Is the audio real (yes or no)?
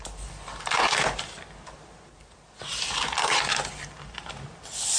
yes